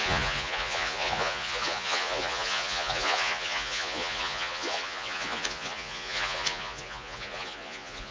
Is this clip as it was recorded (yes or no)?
no